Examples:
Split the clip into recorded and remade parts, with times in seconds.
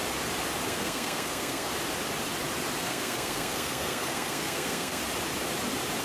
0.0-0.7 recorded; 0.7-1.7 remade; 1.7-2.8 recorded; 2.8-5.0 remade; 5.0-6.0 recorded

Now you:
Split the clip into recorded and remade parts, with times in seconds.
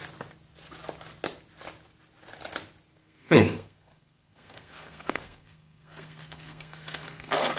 0.0-3.0 recorded; 3.0-7.6 remade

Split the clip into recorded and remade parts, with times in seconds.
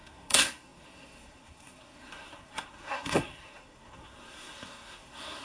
0.0-5.4 remade